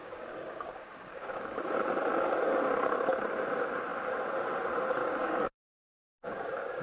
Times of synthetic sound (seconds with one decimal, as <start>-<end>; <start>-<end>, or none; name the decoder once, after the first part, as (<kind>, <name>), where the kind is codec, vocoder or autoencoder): 0.0-1.6 (codec, DAC); 5.0-6.8